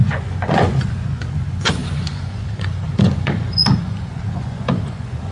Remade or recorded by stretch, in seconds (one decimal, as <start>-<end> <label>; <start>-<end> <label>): 0.0-5.3 remade